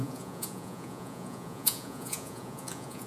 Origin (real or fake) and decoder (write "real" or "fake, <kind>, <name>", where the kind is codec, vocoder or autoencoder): fake, vocoder, Vocos